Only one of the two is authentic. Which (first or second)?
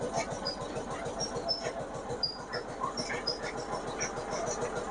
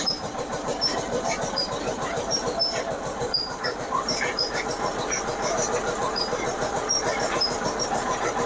first